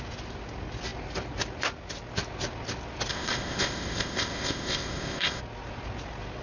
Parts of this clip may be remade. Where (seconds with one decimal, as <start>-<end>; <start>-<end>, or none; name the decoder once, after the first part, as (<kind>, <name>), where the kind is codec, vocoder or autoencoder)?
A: 3.1-5.4 (codec, ZipCodec)